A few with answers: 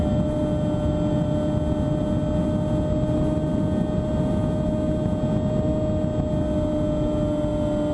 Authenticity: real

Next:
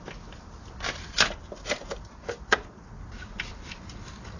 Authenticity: real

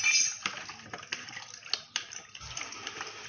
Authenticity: real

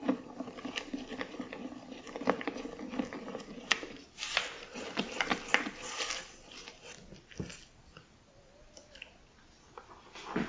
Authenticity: real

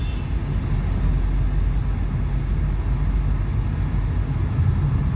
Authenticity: real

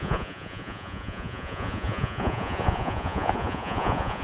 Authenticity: fake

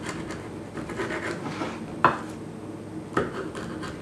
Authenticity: real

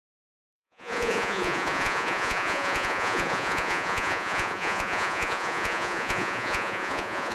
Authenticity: fake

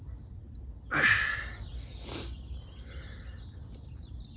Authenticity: real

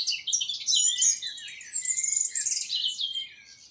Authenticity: real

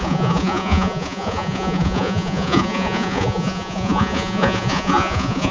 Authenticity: fake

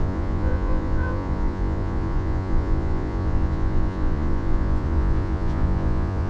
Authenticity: fake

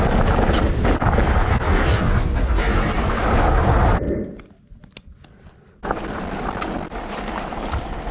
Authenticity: real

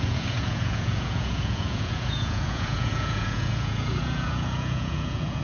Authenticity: fake